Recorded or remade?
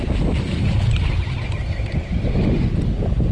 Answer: recorded